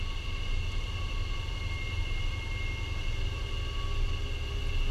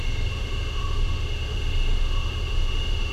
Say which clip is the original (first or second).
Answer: first